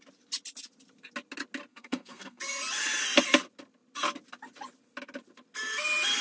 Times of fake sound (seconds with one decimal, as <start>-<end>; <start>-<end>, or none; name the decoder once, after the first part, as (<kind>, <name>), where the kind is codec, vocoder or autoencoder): 1.7-2.4 (codec, SNAC)